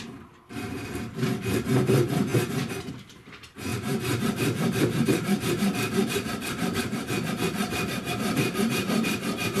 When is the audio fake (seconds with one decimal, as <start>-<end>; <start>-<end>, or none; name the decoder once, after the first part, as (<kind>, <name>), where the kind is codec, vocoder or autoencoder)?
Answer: 0.0-9.6 (vocoder, BigVGAN v2)